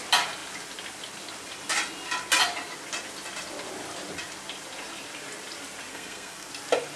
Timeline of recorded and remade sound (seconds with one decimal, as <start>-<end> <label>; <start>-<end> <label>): 0.0-5.9 recorded; 5.9-6.5 remade; 6.5-7.0 recorded